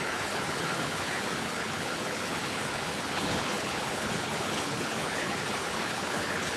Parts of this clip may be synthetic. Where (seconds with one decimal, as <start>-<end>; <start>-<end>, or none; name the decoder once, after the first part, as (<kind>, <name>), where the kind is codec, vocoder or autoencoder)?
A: 0.0-6.6 (codec, HILCodec)